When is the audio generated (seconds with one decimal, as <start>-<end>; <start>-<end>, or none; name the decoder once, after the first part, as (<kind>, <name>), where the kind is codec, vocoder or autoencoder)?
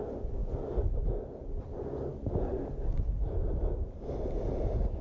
none